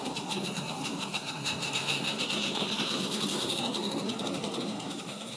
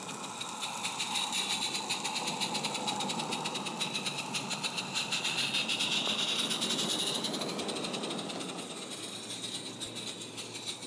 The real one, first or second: second